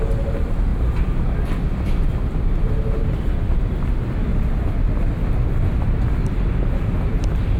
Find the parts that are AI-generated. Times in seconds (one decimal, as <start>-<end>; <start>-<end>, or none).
none